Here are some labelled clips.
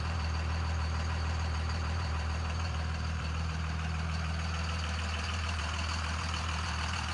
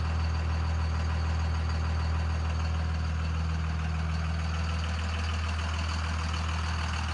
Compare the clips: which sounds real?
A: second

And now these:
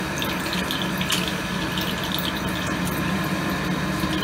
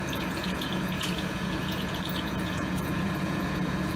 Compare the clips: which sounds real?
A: first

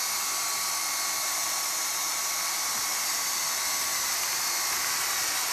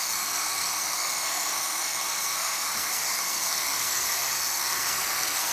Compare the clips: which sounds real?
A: first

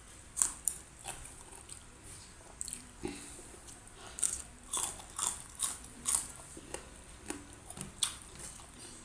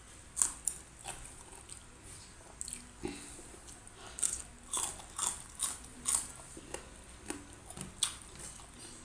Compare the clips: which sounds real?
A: second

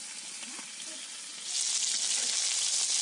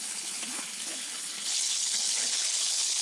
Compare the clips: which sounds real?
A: first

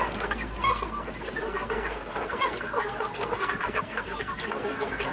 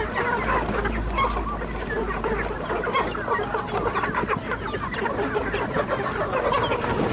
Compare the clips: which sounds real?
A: second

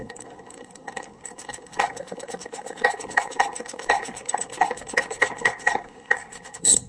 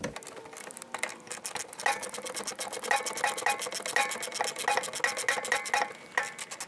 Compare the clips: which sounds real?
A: second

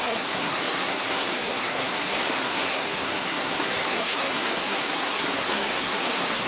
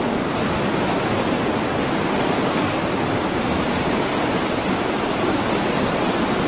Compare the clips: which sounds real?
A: second